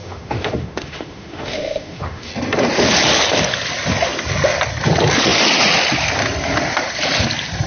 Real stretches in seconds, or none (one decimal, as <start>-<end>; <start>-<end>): 2.3-7.7